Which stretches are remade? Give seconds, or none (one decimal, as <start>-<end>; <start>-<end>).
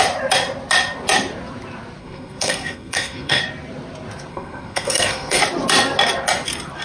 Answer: 2.0-3.4; 4.3-5.4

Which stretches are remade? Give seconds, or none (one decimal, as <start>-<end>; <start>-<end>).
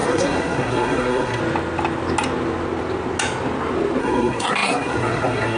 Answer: 0.0-1.4; 4.0-5.6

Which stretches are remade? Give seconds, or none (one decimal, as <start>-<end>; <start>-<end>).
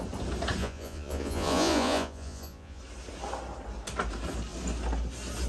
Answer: 0.6-2.8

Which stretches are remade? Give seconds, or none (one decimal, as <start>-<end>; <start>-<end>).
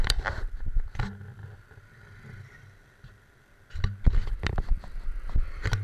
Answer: none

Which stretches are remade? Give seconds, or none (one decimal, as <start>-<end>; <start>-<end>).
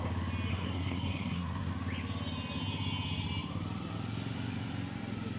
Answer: 0.5-1.7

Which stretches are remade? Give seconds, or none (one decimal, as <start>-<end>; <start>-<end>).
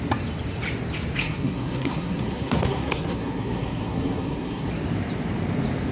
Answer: 1.2-4.7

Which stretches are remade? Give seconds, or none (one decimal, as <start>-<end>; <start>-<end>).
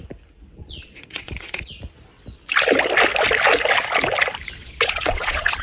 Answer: 0.6-1.7; 4.6-5.6